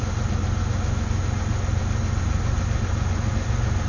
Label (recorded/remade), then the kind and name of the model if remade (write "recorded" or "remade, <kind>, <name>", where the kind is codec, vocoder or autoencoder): recorded